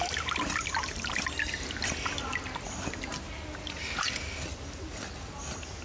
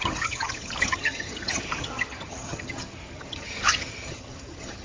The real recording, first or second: first